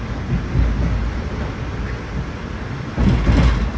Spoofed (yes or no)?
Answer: no